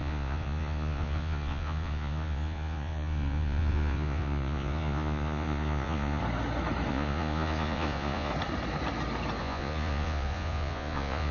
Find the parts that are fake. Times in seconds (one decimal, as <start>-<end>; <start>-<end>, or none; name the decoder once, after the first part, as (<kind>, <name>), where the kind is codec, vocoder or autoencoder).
0.0-6.2 (vocoder, Vocos); 6.9-8.3; 9.4-11.3

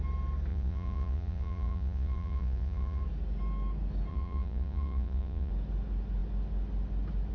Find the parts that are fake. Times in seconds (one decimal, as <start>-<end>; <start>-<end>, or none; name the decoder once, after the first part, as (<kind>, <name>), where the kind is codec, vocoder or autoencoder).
0.5-3.0 (vocoder, Vocos); 4.1-5.5

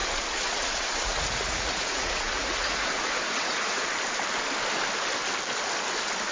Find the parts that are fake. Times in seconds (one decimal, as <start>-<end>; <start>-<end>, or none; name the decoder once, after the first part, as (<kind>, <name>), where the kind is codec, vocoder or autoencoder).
0.0-3.8 (vocoder, Vocos)

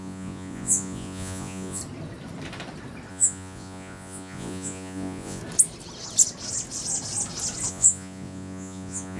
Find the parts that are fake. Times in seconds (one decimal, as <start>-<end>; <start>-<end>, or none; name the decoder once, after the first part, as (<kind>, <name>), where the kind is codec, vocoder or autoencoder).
0.0-1.8 (vocoder, Vocos); 3.1-5.4; 7.7-9.2

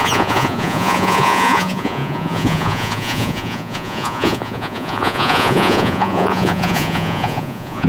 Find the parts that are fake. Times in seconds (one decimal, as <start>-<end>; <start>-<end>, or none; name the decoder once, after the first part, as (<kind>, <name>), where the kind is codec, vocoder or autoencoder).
0.0-7.9 (vocoder, Vocos)

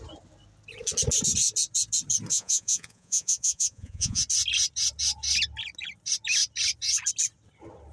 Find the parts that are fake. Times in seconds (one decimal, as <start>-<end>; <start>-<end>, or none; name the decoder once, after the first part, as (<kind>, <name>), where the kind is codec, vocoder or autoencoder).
2.3-4.2 (vocoder, Vocos)